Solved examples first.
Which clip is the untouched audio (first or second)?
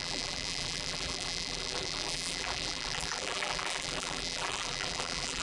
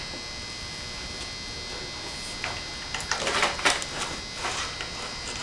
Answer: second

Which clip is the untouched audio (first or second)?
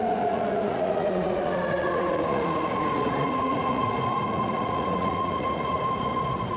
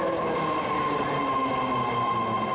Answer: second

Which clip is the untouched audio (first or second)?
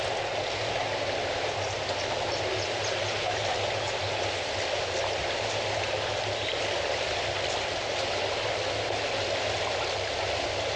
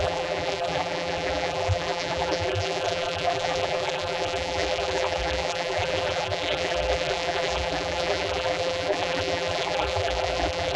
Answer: first